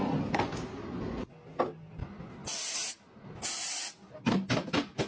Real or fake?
real